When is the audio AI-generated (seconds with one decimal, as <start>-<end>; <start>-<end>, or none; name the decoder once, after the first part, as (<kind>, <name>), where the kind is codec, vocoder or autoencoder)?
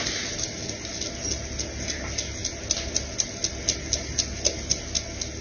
none